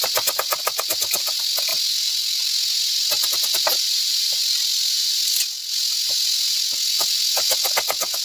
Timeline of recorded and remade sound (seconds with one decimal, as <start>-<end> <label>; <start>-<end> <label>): 0.0-8.2 recorded